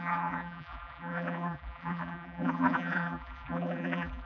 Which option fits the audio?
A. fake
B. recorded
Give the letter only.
A